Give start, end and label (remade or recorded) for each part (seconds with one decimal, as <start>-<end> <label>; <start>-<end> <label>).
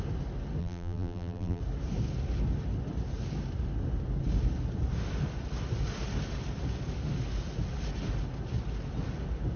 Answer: 0.0-0.6 recorded; 0.6-1.6 remade; 1.6-9.6 recorded